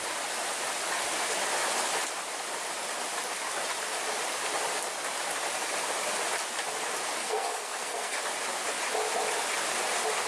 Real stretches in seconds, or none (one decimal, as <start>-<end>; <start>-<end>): 0.0-7.2; 8.2-10.3